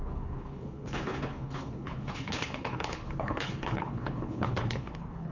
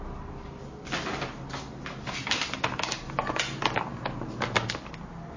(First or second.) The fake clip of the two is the first